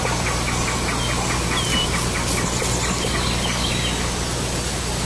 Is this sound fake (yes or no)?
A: no